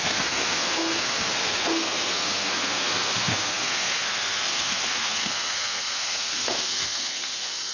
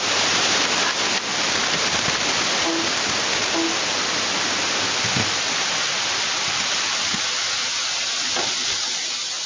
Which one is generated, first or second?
first